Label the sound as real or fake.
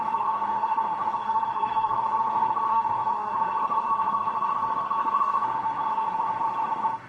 fake